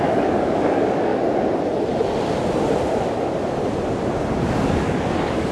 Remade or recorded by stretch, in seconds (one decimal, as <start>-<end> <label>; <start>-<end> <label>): 0.0-1.1 remade; 1.1-4.4 recorded; 4.4-5.5 remade